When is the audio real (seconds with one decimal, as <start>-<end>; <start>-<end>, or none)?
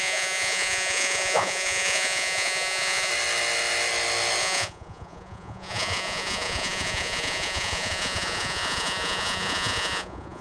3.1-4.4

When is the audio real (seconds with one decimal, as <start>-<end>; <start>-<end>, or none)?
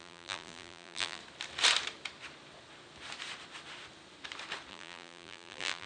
1.2-4.7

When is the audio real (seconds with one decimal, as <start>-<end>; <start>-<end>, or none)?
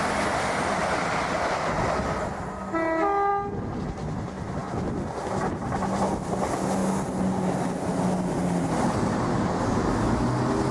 0.0-10.7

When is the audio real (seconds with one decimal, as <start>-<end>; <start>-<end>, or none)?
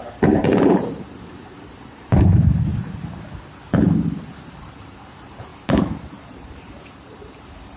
2.7-4.6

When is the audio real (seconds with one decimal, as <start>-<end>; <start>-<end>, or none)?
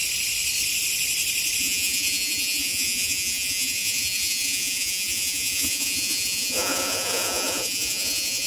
0.0-1.6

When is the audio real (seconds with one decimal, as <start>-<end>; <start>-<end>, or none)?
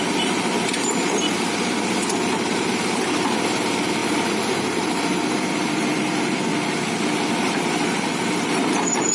6.5-7.3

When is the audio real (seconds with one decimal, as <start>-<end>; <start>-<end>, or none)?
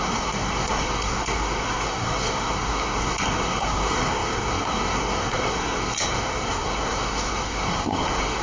none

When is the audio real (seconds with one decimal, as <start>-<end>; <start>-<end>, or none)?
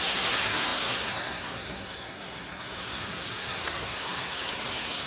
none